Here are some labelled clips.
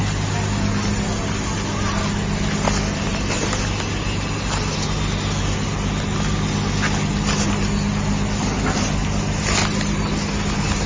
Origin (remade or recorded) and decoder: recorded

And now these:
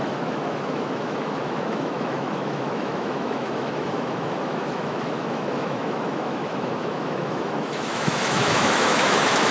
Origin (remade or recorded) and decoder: remade, autoencoder, DAC-VAE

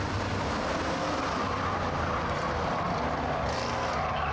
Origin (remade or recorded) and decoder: recorded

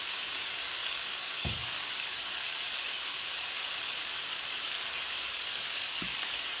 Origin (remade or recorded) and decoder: remade, codec, DAC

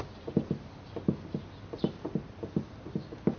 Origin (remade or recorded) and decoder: recorded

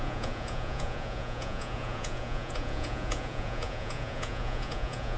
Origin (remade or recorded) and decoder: remade, vocoder, Vocos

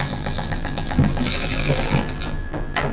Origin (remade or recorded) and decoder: remade, vocoder, BigVGAN v2